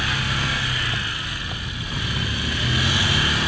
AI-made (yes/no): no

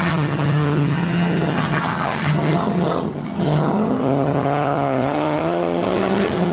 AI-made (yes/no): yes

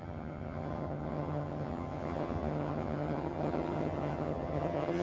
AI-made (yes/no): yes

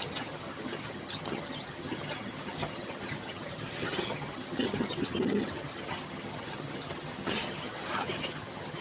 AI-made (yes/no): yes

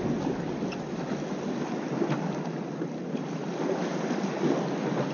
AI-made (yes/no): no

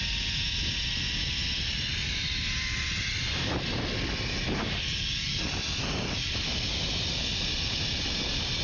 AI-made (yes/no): no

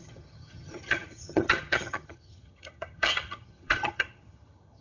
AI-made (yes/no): yes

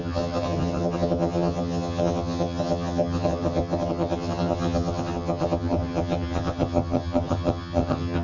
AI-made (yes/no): yes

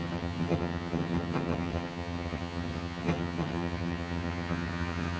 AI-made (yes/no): yes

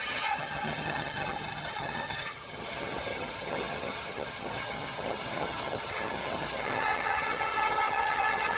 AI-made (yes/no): yes